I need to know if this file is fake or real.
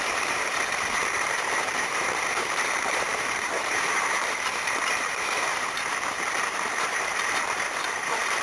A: fake